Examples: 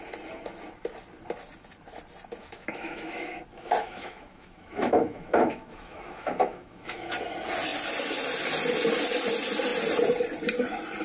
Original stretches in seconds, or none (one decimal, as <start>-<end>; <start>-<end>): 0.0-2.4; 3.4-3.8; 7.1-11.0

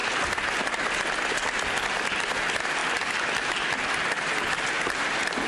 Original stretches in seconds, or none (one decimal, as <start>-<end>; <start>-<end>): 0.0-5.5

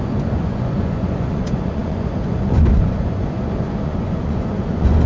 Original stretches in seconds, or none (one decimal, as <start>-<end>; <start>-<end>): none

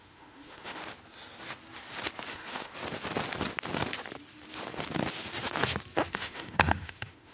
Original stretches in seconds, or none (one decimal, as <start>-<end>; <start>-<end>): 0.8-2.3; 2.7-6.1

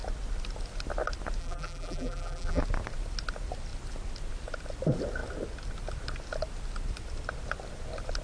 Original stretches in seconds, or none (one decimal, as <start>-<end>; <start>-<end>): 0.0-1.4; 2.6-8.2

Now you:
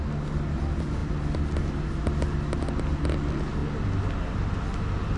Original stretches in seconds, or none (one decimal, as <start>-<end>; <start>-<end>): 0.0-5.2